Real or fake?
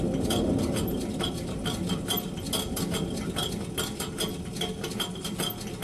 real